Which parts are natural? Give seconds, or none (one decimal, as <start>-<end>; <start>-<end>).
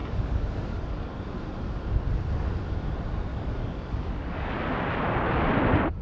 1.2-3.3; 4.5-6.0